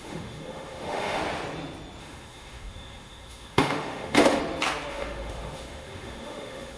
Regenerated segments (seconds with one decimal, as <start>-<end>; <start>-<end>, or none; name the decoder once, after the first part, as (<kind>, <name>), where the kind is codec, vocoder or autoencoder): 0.0-1.2 (autoencoder, DAC-VAE); 2.0-4.4; 4.9-6.8